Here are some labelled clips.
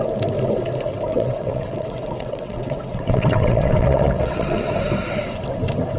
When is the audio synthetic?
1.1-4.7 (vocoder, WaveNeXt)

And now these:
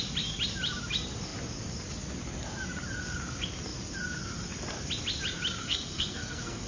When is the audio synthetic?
5.6-6.7 (codec, SNAC)

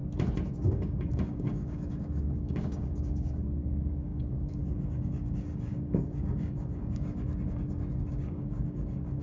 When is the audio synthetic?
0.5-9.2 (codec, DAC)

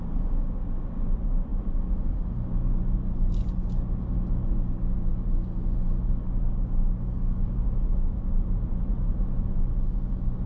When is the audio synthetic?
8.3-9.8 (vocoder, BigVGAN v2)